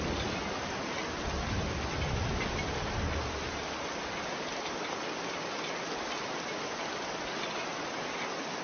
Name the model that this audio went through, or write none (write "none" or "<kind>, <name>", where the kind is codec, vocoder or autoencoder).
none